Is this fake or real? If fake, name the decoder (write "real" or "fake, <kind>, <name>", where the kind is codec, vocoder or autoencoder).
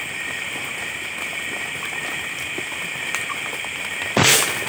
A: real